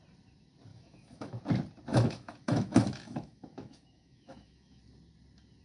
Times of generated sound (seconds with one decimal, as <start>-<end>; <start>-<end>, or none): 0.7-1.4; 1.9-4.8